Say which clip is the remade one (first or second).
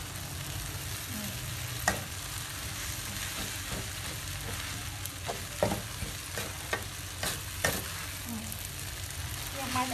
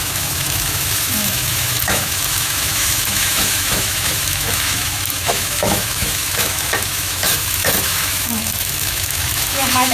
second